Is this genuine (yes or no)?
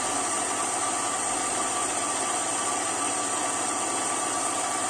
yes